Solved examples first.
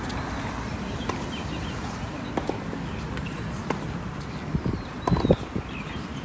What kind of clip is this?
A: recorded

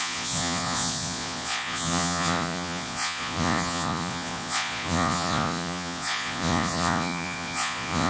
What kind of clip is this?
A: remade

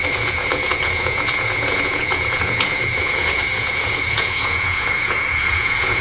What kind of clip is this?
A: remade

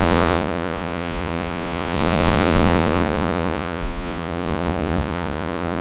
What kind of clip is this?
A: remade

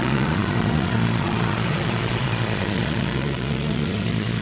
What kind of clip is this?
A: remade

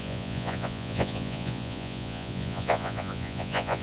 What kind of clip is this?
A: remade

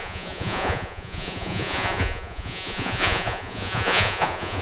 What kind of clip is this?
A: remade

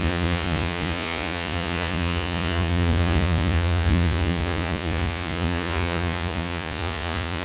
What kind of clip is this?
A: remade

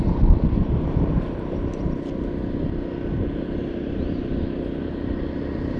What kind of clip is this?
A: recorded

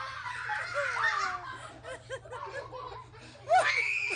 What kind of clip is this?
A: recorded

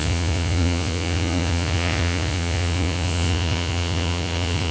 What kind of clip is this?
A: remade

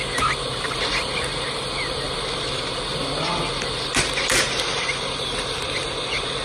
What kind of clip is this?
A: recorded